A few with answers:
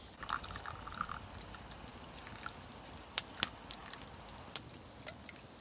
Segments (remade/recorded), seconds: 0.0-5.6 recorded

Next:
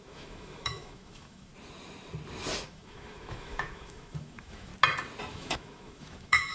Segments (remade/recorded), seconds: 0.0-1.5 remade; 1.5-2.7 recorded; 2.7-4.7 remade; 4.7-5.3 recorded; 5.3-6.5 remade

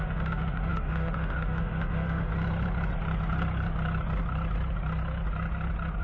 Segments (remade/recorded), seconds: 0.0-2.3 remade; 2.3-6.0 recorded

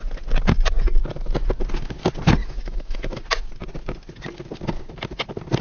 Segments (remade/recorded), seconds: 0.0-2.4 recorded; 2.4-3.2 remade; 3.2-5.6 recorded

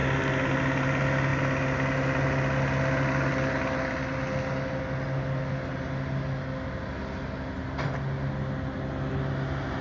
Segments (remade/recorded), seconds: 0.0-9.8 recorded